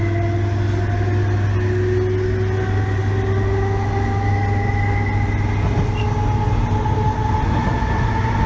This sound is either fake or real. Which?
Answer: real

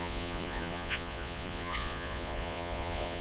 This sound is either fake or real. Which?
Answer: fake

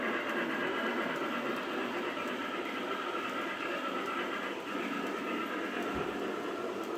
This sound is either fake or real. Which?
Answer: real